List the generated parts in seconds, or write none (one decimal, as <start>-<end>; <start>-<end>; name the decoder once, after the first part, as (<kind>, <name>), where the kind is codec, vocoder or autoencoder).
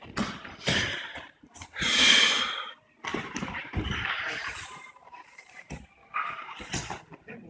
3.1-6.1 (vocoder, BigVGAN v2)